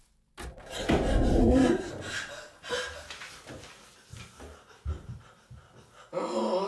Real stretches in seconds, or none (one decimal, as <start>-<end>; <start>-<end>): 0.0-1.4; 1.9-6.7